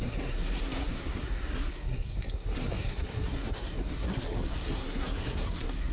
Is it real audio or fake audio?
fake